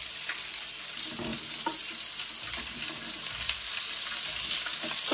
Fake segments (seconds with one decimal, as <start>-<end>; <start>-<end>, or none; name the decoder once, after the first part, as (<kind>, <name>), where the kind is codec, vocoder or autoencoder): none